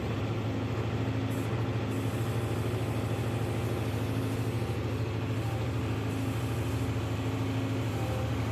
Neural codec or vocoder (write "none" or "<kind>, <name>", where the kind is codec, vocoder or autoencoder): none